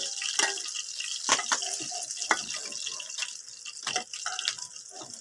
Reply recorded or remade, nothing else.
recorded